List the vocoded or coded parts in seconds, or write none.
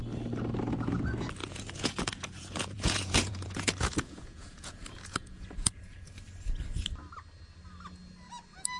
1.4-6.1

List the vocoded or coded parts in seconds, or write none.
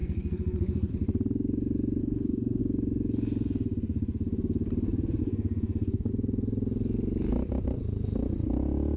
0.0-0.9; 2.0-2.6; 5.2-6.1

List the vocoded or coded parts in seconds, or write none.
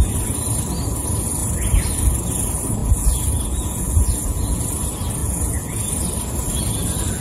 2.8-4.6; 5.2-5.9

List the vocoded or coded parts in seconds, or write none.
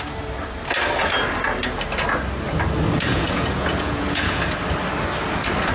3.1-4.4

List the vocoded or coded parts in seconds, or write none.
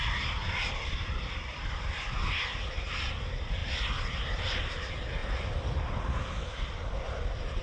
0.4-1.2; 3.6-4.6; 5.2-7.6